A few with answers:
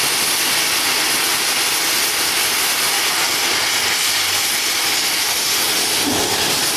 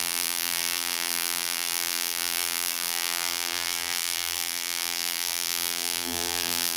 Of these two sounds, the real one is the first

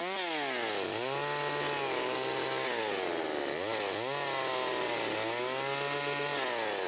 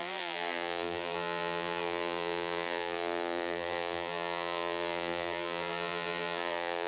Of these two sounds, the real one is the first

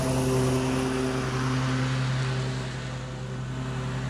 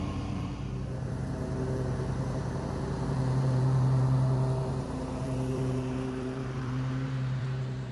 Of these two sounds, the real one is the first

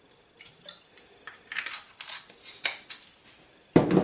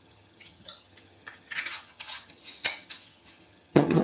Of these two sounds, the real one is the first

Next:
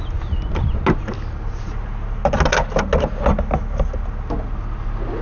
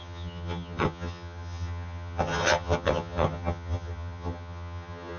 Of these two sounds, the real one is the first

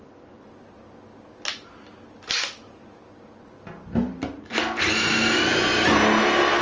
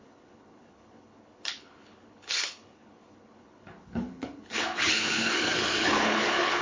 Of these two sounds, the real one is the first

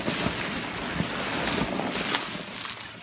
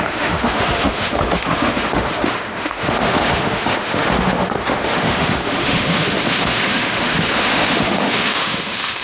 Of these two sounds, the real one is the first